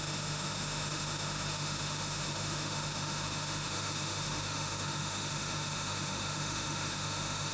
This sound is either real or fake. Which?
fake